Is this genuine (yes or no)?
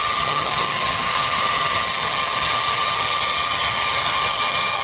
no